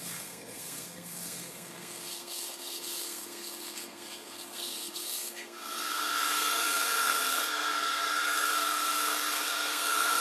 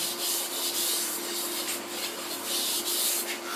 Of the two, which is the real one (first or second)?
second